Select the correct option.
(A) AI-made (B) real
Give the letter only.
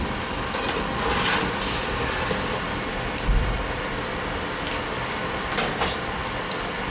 B